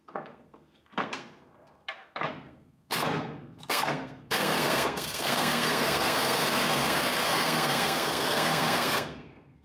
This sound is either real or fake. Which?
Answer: fake